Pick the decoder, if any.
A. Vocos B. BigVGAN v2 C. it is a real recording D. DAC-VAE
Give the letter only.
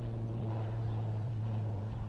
A